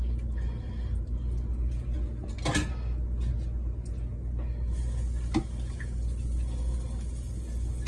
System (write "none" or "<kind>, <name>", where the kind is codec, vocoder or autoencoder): none